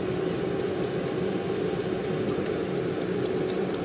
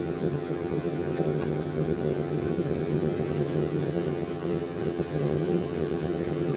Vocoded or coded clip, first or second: second